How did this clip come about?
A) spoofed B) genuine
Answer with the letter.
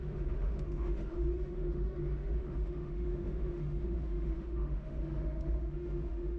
A